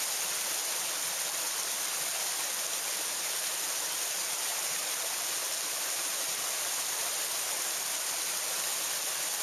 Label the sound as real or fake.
real